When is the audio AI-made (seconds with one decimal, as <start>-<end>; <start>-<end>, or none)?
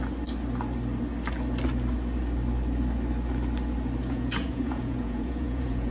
4.0-5.9